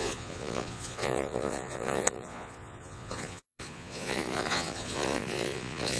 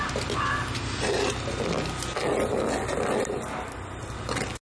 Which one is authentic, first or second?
second